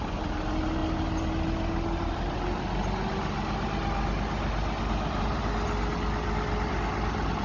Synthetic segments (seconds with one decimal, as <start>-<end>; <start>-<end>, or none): none